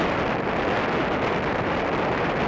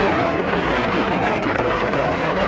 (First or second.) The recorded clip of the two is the first